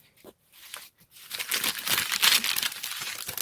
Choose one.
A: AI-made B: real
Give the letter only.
B